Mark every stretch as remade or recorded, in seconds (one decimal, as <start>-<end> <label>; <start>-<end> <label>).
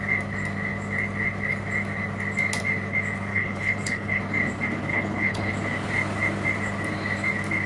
0.0-3.3 recorded; 3.3-4.2 remade; 4.2-4.9 recorded; 4.9-5.5 remade; 5.5-7.7 recorded